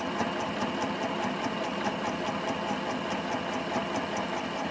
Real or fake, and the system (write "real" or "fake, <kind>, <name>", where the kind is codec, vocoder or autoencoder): real